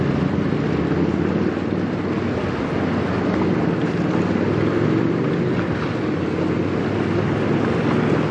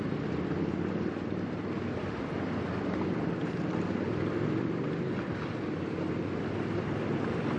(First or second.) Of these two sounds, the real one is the first